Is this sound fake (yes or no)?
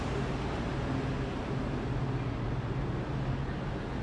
no